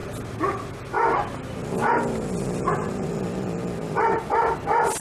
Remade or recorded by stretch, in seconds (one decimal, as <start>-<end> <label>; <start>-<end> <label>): 0.0-5.0 recorded